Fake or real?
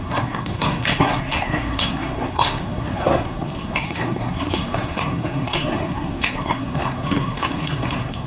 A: fake